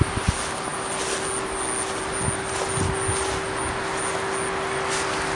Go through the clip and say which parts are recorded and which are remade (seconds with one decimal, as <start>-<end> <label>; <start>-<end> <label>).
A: 0.0-5.4 recorded